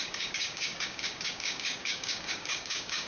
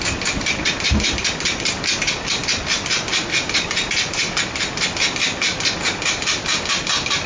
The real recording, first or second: second